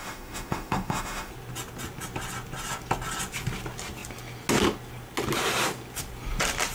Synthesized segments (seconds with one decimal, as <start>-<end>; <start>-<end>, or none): 0.0-1.3